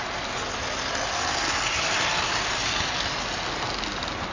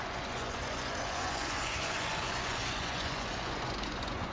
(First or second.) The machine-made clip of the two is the second